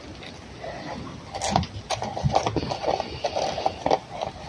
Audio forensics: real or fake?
real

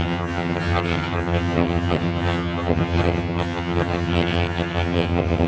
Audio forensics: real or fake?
fake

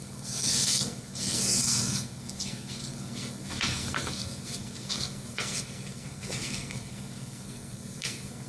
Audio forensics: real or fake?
fake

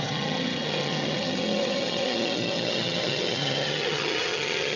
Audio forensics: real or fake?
fake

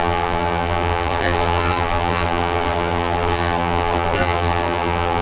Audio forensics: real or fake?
fake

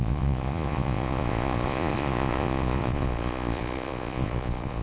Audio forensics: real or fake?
fake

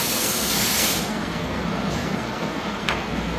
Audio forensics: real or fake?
fake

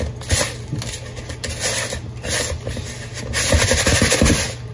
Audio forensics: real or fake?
real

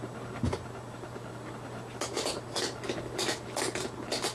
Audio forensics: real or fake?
real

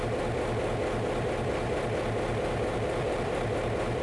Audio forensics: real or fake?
fake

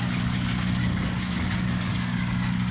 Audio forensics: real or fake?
fake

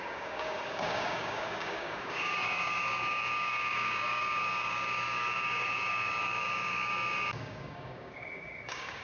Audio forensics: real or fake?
fake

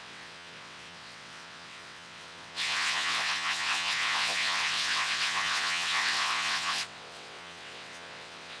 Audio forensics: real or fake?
fake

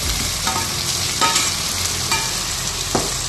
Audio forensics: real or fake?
real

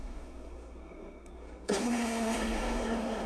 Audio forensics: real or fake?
fake